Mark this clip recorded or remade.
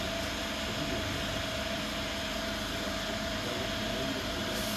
recorded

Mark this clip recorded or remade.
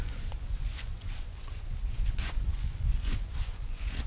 remade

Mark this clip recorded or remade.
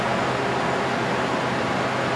recorded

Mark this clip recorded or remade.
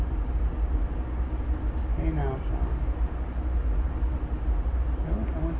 recorded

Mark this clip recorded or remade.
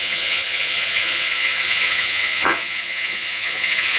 remade